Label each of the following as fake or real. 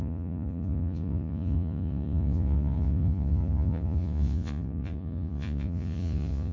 fake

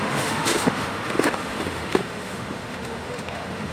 fake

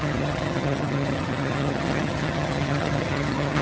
fake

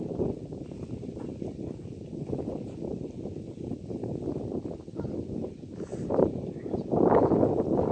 real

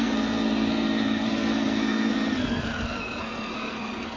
fake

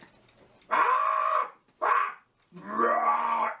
real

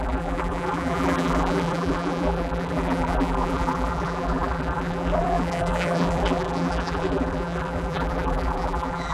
fake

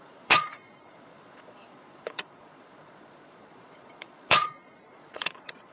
fake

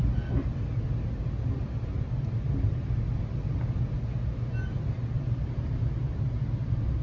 real